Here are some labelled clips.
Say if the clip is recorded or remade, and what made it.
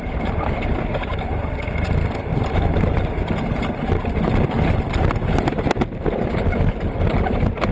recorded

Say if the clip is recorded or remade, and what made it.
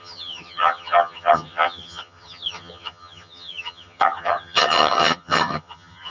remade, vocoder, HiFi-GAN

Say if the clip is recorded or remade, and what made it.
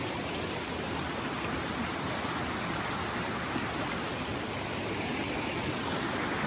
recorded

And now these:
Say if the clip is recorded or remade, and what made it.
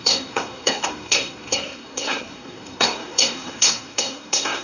remade, codec, SNAC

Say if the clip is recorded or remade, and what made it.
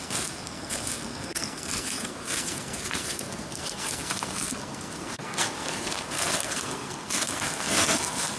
remade, codec, SNAC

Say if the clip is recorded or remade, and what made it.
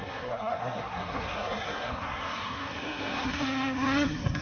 remade, codec, SNAC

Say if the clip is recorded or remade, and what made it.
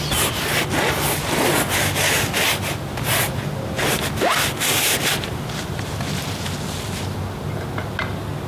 recorded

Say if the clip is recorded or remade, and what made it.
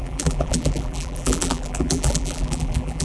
remade, vocoder, BigVGAN v2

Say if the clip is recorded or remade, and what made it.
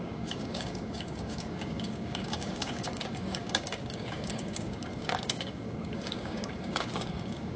remade, codec, DAC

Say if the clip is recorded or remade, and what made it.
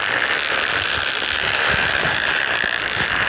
recorded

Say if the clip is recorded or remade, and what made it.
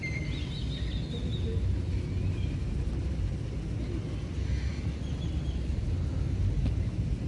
recorded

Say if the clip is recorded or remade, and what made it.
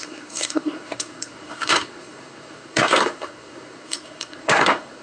remade, codec, SNAC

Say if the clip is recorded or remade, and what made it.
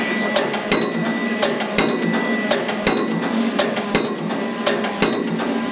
recorded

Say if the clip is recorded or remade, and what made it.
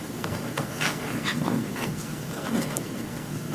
remade, codec, SNAC